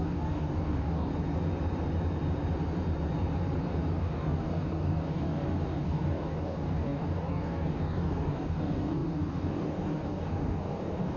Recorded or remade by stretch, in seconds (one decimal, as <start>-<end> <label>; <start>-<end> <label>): 0.0-1.1 remade; 1.1-4.0 recorded; 4.0-11.2 remade